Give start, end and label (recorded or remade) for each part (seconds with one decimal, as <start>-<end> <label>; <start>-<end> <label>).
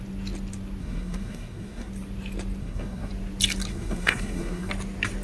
0.0-0.8 recorded; 0.8-1.9 remade; 1.9-2.6 recorded; 2.6-3.1 remade; 3.1-3.7 recorded; 3.7-4.7 remade; 4.7-5.2 recorded